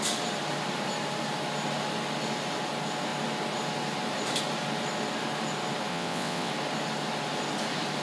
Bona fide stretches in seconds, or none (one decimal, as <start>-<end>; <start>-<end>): 0.0-5.9; 6.5-8.0